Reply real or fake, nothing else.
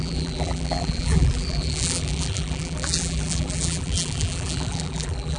fake